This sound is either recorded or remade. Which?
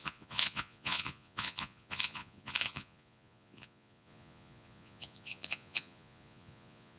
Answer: remade